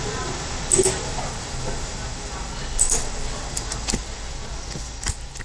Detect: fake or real real